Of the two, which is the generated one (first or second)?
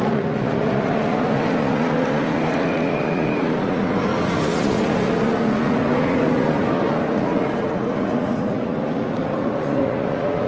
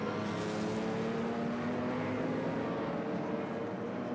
first